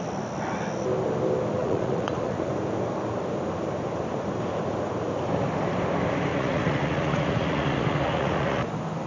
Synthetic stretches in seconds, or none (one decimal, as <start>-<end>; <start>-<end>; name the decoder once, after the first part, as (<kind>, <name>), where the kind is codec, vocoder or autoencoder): 1.6-2.5 (vocoder, Vocos); 6.3-8.7